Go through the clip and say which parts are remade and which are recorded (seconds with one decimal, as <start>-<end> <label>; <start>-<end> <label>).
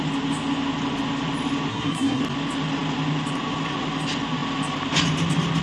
0.0-1.7 recorded; 1.7-2.2 remade; 2.2-5.6 recorded